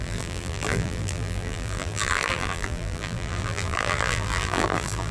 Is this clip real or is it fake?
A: fake